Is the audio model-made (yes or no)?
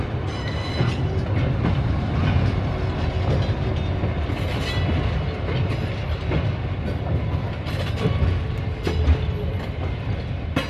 no